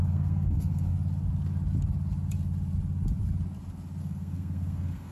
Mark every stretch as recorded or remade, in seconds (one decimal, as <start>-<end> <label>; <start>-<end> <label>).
0.0-0.9 remade; 0.9-4.0 recorded; 4.0-5.1 remade